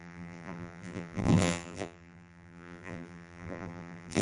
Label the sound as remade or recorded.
remade